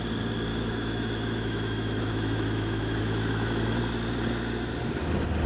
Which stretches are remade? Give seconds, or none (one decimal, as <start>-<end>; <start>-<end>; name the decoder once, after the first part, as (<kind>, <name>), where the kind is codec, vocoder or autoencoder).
0.5-3.8 (autoencoder, DAC-VAE)